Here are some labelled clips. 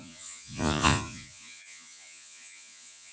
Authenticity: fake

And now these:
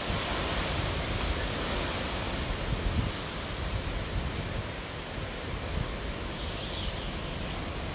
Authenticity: real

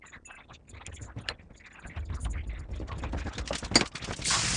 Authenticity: real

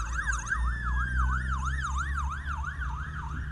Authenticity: real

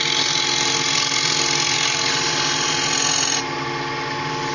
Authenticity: real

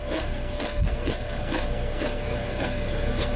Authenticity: fake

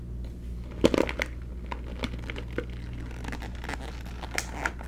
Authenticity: real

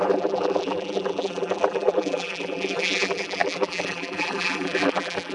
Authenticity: fake